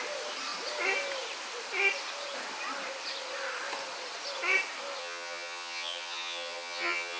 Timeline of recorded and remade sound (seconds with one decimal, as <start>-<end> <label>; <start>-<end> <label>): 0.0-5.0 recorded; 5.0-7.2 remade